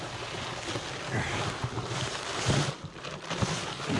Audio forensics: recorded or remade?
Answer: recorded